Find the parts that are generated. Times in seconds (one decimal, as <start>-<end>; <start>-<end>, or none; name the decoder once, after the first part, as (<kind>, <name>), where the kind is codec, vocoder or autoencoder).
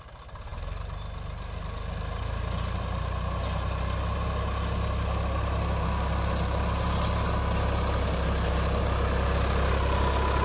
none